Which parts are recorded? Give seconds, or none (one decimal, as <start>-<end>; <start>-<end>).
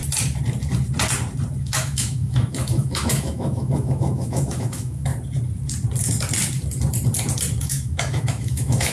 0.0-1.6; 5.1-7.6